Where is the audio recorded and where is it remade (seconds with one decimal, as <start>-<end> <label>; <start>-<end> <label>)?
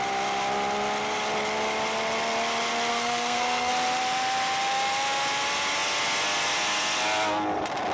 0.0-2.9 recorded; 2.9-3.7 remade; 3.7-7.9 recorded